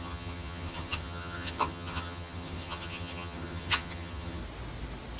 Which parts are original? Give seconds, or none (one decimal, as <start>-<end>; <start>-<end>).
4.4-5.2